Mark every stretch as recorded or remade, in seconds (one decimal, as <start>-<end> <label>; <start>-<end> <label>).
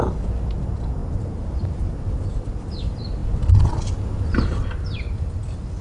0.0-1.0 recorded; 1.0-2.1 remade; 2.1-5.8 recorded